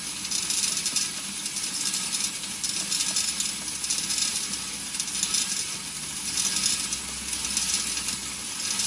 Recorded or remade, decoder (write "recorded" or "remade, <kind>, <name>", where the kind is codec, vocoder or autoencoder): recorded